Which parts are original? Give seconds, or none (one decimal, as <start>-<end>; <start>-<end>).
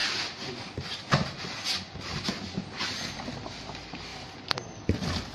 0.0-5.3